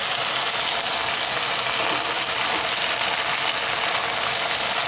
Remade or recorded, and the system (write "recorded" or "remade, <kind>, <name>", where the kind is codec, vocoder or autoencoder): recorded